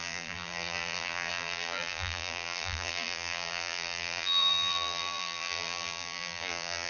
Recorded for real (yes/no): no